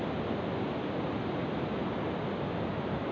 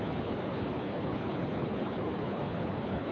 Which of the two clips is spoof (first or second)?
second